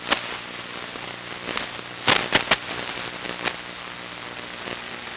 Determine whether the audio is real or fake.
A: real